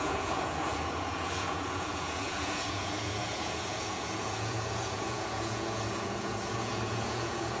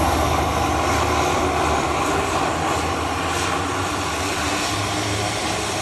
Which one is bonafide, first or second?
second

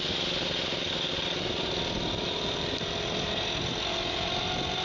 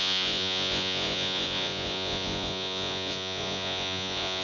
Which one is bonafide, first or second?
first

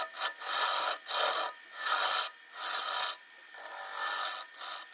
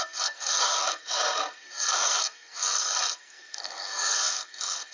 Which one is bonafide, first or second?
first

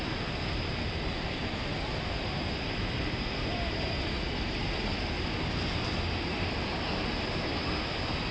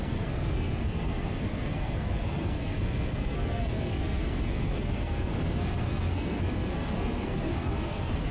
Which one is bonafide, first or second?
first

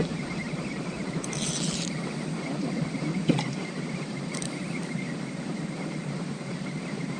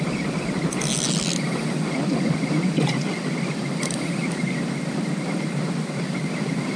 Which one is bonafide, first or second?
second